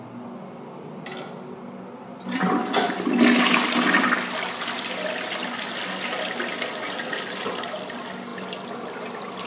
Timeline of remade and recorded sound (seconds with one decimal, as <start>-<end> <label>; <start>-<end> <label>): 0.0-9.5 recorded

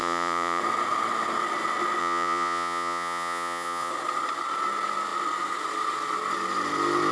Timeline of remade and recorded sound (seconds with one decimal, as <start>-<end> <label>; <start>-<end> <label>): 0.0-0.6 remade; 0.6-2.0 recorded; 2.0-3.9 remade; 3.9-7.1 recorded

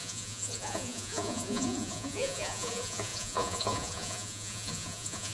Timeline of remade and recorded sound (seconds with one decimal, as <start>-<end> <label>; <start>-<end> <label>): 0.0-5.3 remade

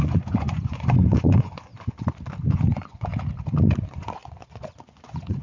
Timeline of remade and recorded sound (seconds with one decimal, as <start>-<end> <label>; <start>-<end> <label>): 0.0-1.7 remade; 1.7-2.4 recorded; 2.4-3.1 remade; 3.1-3.9 recorded; 3.9-5.4 remade

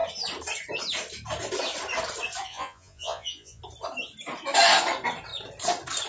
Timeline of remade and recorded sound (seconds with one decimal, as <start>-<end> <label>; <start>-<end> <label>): 0.0-2.5 recorded; 2.5-3.6 remade; 3.6-6.1 recorded